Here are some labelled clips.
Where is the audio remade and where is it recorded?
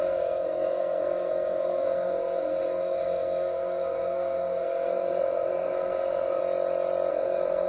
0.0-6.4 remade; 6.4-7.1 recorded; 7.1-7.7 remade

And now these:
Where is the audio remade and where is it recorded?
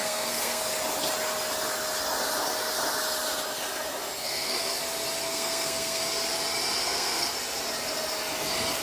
0.0-0.6 remade; 0.6-4.2 recorded; 4.2-4.8 remade; 4.8-5.2 recorded; 5.2-6.0 remade; 6.0-6.8 recorded; 6.8-7.3 remade; 7.3-8.8 recorded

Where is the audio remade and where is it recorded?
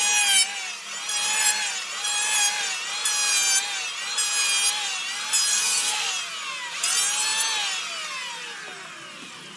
0.0-5.5 recorded; 5.5-6.1 remade; 6.1-9.6 recorded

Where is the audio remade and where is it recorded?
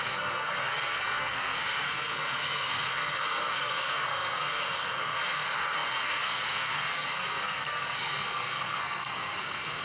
0.0-9.8 remade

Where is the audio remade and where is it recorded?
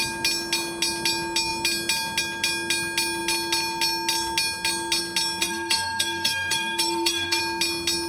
0.0-5.4 recorded; 5.4-7.4 remade; 7.4-8.1 recorded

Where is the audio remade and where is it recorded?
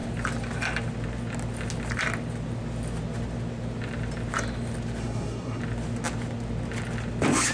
0.0-5.0 recorded; 5.0-5.6 remade; 5.6-7.5 recorded